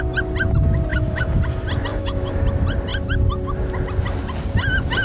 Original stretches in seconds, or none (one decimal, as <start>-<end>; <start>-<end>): 0.0-0.9; 1.4-1.9; 2.4-5.0